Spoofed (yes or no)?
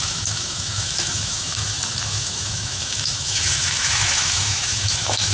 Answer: yes